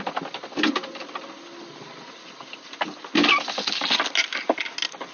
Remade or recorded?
recorded